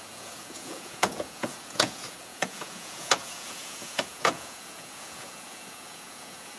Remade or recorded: remade